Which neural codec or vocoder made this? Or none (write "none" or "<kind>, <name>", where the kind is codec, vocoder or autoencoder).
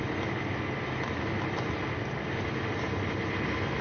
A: none